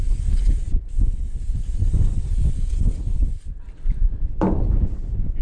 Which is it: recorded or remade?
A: recorded